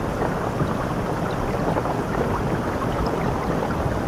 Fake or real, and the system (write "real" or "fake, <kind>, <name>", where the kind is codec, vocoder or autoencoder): real